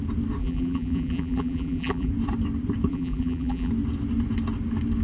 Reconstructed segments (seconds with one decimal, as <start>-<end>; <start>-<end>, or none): 0.4-2.1; 2.9-3.7